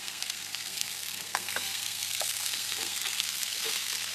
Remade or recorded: remade